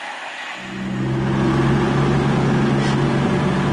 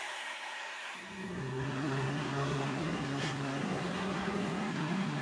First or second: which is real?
first